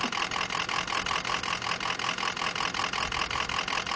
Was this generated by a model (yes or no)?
no